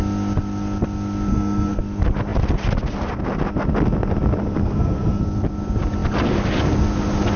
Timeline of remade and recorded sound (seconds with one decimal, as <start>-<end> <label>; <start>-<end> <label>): 0.0-1.3 recorded; 1.3-1.8 remade; 1.8-4.6 recorded; 4.6-5.2 remade; 5.2-7.4 recorded